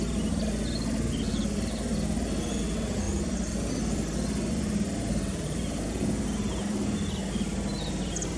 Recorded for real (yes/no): yes